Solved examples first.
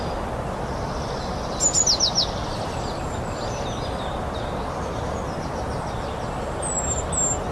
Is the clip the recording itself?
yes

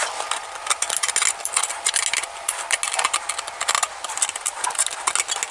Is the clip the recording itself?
yes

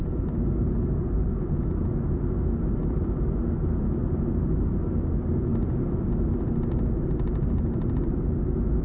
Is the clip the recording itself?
yes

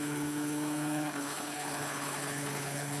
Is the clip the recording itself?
no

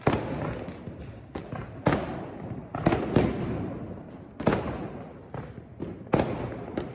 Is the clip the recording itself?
yes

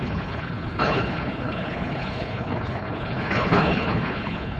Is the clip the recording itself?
no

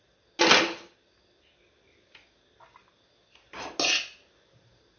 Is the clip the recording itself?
yes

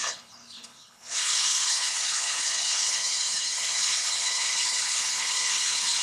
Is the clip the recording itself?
no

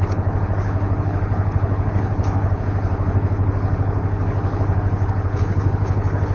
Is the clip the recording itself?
no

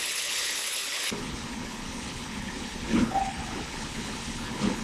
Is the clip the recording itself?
no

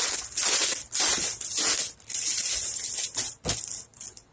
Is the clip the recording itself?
yes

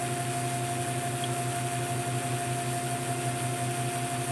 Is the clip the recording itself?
yes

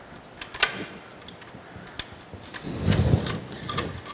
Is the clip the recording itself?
yes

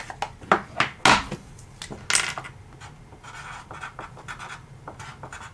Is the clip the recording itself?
yes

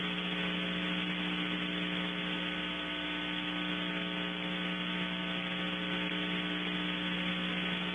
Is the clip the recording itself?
yes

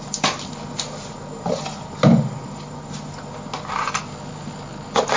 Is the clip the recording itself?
yes